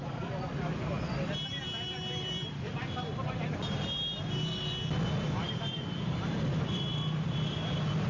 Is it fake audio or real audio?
fake